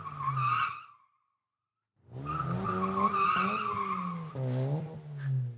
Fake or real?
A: real